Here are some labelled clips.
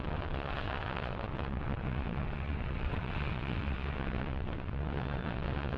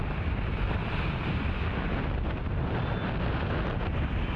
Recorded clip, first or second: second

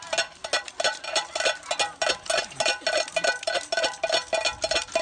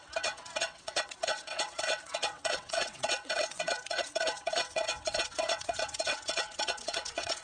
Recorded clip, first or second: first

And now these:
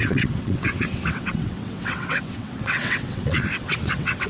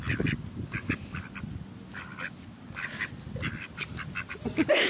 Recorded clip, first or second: second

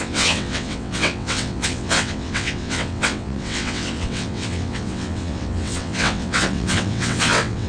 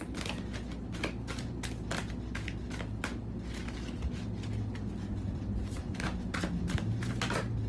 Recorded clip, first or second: second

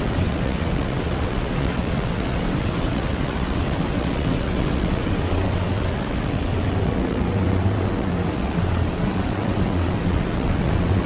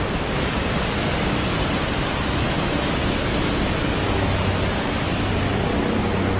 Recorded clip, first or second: second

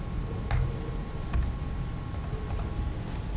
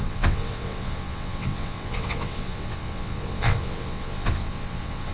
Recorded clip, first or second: first